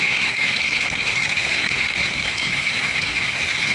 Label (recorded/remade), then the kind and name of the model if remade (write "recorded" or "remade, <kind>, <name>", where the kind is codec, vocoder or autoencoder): remade, codec, SNAC